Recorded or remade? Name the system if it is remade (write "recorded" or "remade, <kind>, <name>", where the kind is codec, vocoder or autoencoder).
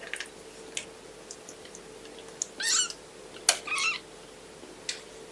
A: recorded